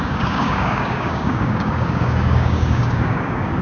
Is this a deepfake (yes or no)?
yes